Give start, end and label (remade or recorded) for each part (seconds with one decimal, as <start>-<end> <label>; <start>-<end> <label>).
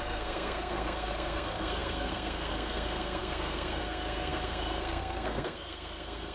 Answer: 0.0-6.3 remade